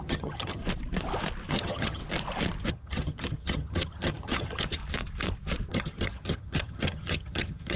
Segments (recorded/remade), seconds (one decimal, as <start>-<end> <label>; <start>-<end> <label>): 0.0-0.6 remade; 0.6-1.5 recorded; 1.5-2.0 remade; 2.0-2.7 recorded; 2.7-4.8 remade; 4.8-5.7 recorded; 5.7-7.8 remade